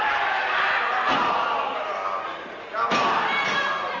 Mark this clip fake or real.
real